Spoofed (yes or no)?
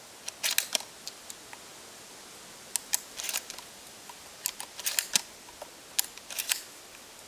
no